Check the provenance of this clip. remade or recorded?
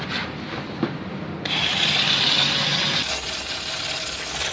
recorded